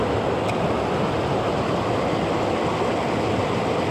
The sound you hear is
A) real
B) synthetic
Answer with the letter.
A